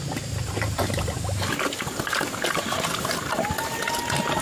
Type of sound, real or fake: real